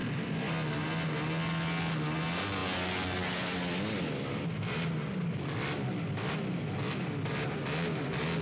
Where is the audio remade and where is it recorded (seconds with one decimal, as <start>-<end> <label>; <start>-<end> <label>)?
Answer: 0.0-8.4 recorded